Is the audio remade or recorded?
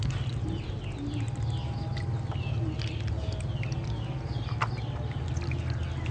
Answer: recorded